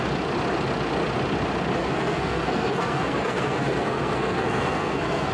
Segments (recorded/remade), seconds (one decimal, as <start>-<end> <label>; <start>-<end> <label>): 0.0-1.8 recorded; 1.8-5.3 remade